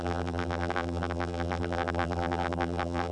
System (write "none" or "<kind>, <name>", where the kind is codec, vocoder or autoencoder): vocoder, BigVGAN v2